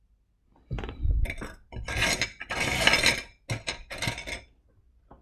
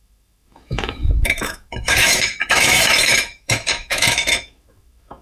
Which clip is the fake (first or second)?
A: second